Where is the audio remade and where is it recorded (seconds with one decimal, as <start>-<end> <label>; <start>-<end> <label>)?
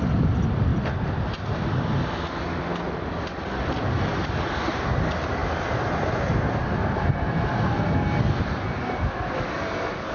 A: 0.0-10.1 recorded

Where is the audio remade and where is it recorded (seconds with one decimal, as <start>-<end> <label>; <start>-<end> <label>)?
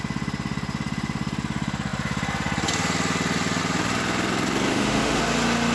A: 0.0-4.7 recorded; 4.7-5.2 remade; 5.2-5.7 recorded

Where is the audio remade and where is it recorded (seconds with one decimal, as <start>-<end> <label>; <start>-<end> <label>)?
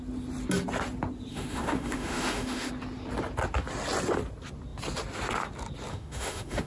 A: 0.0-1.3 recorded; 1.3-2.7 remade; 2.7-5.9 recorded; 5.9-6.7 remade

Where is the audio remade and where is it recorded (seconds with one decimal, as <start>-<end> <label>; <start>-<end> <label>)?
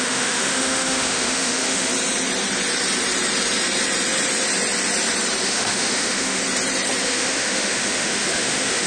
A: 0.0-1.9 remade; 1.9-5.4 recorded; 5.4-6.4 remade; 6.4-7.0 recorded; 7.0-8.9 remade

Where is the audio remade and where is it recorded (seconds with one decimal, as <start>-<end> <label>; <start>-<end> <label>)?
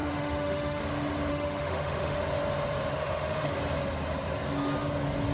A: 0.0-0.8 remade; 0.8-1.3 recorded; 1.3-2.2 remade; 2.2-2.9 recorded; 2.9-3.6 remade; 3.6-5.3 recorded